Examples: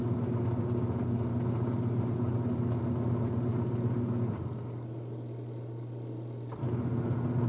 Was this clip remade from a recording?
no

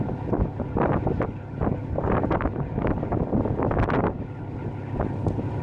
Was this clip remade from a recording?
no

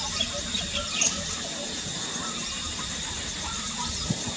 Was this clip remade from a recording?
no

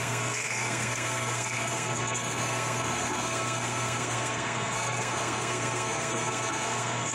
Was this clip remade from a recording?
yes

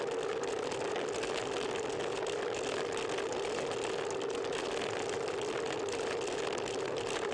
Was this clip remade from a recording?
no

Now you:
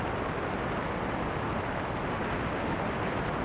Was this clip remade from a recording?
no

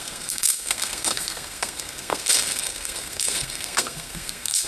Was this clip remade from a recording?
yes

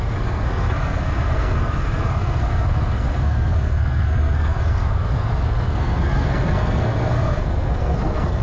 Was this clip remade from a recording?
yes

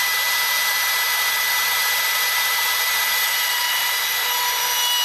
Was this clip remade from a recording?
no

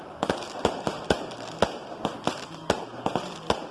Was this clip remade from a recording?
no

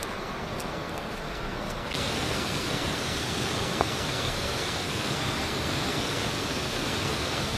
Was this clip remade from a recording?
yes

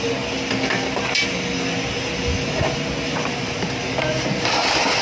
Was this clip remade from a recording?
no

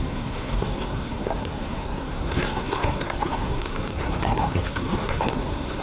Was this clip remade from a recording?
yes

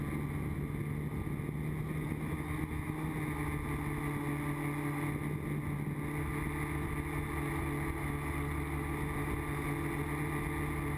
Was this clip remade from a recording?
no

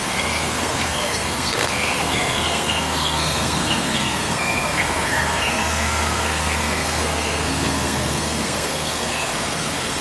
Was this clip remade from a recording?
yes